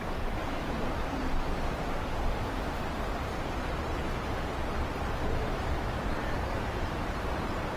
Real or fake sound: fake